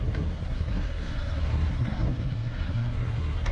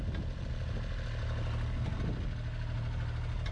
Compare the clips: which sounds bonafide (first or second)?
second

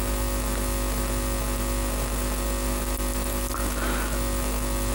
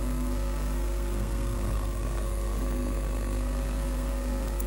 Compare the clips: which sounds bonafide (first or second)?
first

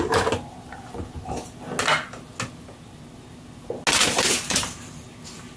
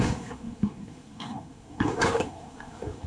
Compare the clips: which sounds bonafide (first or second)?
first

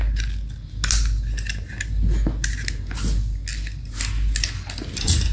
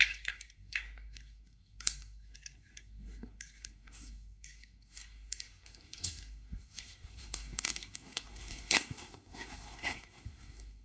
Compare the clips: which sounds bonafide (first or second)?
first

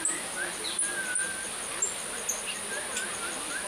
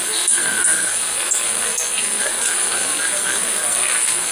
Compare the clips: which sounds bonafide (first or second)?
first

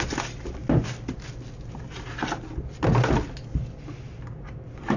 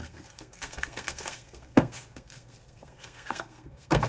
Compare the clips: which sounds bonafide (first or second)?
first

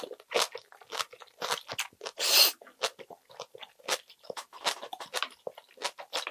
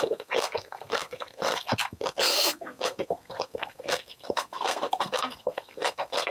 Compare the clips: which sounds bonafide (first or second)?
first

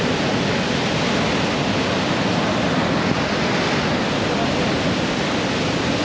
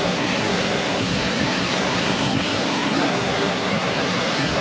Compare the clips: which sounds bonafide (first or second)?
first